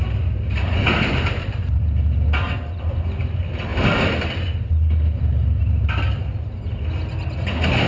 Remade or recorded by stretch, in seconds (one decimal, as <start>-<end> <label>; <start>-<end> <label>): 0.0-7.9 recorded